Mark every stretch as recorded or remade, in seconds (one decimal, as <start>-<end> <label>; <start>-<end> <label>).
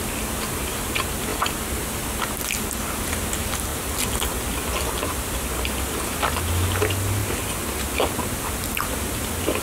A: 0.0-9.6 recorded